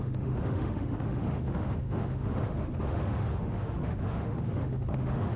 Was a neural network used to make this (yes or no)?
yes